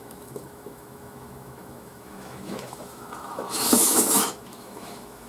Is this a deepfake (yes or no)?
yes